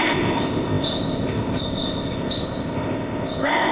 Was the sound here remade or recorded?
remade